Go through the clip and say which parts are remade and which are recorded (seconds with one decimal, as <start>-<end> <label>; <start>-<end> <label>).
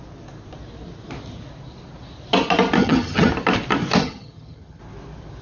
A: 0.0-2.8 recorded; 2.8-3.3 remade; 3.3-4.0 recorded; 4.0-4.8 remade; 4.8-5.4 recorded